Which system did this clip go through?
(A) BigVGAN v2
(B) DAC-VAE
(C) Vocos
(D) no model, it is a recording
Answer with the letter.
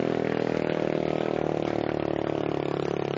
D